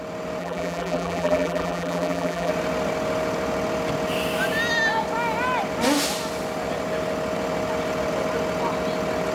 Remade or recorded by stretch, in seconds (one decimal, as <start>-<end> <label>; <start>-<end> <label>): 0.0-0.4 recorded; 0.4-2.5 remade; 2.5-9.3 recorded